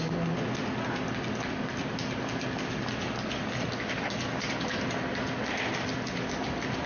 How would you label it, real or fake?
real